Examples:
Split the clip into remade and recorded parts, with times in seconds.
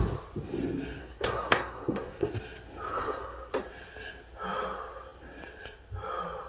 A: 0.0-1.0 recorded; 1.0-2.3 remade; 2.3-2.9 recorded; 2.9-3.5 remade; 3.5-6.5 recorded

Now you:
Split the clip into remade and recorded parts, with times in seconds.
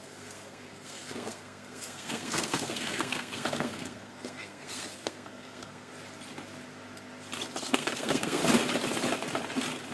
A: 0.0-5.9 remade; 5.9-7.6 recorded; 7.6-8.4 remade; 8.4-9.9 recorded